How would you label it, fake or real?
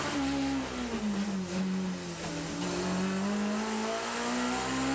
real